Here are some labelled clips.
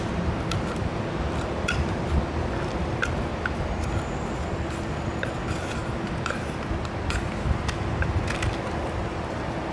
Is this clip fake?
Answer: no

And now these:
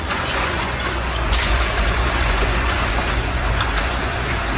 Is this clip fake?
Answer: yes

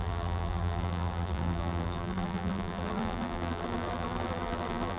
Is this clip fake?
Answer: yes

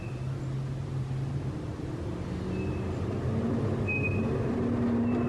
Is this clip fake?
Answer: no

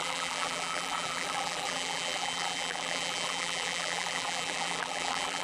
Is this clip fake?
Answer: yes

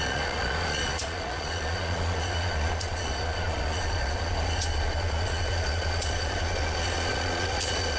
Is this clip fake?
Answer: yes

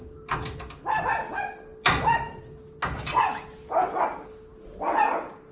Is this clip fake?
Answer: no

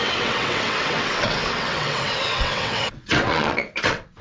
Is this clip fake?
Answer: yes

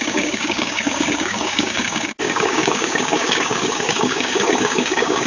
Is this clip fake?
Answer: yes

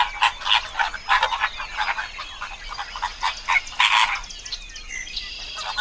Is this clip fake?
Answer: no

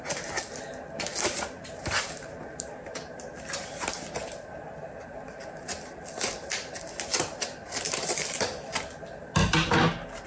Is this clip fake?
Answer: no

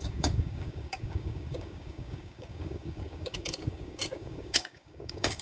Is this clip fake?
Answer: yes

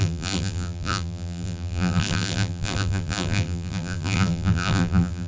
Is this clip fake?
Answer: yes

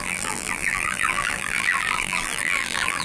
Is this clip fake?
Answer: yes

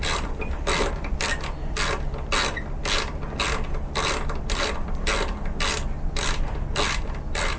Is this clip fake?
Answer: no